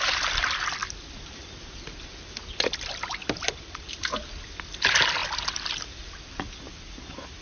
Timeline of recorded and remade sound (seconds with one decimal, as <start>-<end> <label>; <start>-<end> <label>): 0.0-7.4 recorded